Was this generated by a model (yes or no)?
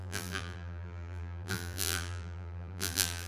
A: yes